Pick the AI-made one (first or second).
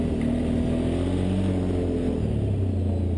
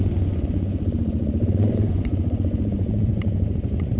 second